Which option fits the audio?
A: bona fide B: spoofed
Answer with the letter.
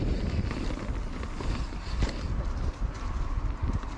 A